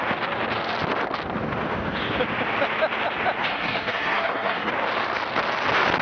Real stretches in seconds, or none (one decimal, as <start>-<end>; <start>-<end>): 0.0-3.5; 4.7-6.0

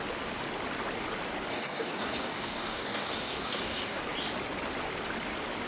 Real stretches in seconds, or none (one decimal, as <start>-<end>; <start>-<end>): 0.0-1.5; 4.0-5.7

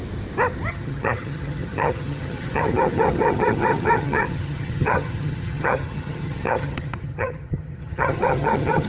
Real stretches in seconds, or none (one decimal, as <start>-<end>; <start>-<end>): 0.0-0.7

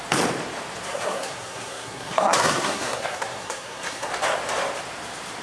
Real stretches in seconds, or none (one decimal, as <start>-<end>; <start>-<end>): 0.0-0.9; 4.1-5.4

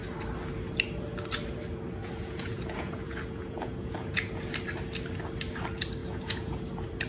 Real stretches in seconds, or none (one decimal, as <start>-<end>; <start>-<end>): 0.0-2.0; 4.4-6.0; 6.6-7.1

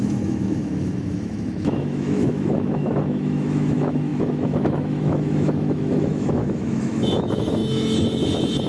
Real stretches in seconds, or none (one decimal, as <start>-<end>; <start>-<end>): 7.6-8.7

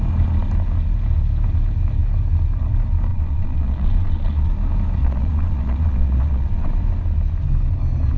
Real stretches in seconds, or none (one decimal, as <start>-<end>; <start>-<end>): 0.0-3.1; 4.5-5.0; 6.7-8.2

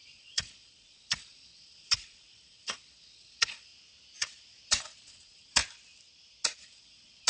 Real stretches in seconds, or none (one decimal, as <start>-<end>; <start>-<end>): 3.7-4.7; 5.6-6.6